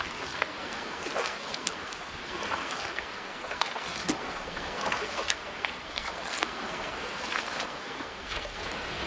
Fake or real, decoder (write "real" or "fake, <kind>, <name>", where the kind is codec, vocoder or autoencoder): fake, codec, SNAC